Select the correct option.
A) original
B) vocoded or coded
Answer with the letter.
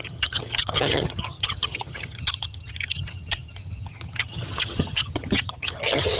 B